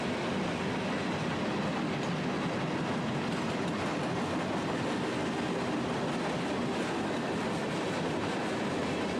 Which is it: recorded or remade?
recorded